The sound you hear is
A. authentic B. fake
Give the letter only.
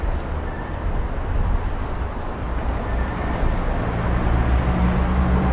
A